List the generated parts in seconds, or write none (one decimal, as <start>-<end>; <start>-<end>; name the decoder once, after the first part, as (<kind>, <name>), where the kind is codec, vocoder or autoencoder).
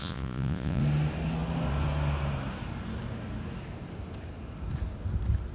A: 0.0-0.8 (vocoder, Vocos)